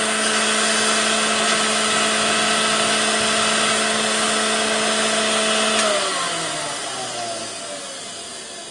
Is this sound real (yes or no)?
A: yes